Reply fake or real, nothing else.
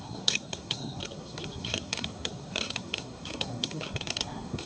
fake